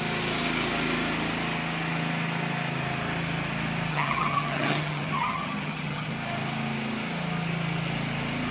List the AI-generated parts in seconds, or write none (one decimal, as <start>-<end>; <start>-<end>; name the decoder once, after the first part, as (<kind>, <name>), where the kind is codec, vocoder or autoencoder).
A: 3.9-6.1 (vocoder, HiFi-GAN)